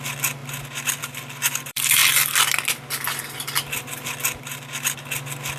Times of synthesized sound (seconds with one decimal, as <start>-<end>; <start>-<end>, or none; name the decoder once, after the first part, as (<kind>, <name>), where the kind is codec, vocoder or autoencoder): 0.0-0.4 (vocoder, BigVGAN v2); 1.0-2.0; 3.2-5.6